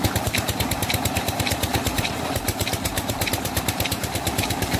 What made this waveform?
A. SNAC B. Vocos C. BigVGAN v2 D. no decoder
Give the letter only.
C